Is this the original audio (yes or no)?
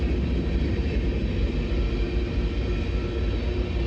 yes